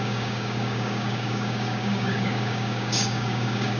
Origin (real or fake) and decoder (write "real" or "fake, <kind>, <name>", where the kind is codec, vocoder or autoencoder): fake, codec, DAC